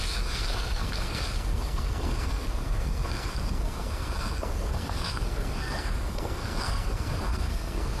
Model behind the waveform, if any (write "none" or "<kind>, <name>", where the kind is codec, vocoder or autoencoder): codec, SNAC